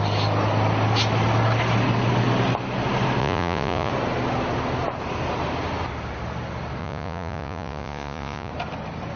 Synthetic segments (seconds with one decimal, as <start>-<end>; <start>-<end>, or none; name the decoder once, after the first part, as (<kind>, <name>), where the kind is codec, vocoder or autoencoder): 3.2-3.9 (vocoder, Vocos); 6.8-8.5